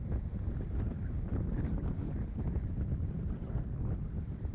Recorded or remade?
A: recorded